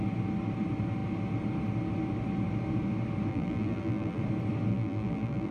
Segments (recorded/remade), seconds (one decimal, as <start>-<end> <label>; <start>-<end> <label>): 0.0-3.3 recorded; 3.3-4.2 remade; 4.2-4.7 recorded; 4.7-5.5 remade